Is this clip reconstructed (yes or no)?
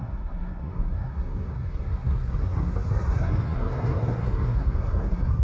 yes